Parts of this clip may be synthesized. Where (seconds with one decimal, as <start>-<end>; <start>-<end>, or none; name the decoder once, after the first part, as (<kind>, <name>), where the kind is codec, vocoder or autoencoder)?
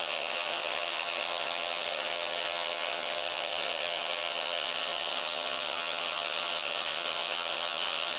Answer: 0.0-8.2 (vocoder, HiFi-GAN)